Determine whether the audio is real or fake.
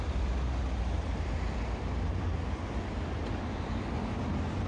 real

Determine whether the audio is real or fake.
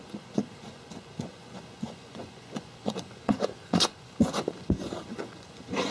fake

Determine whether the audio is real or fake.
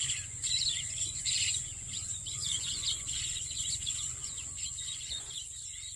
fake